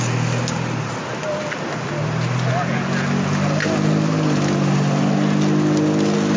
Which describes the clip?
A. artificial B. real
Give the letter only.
B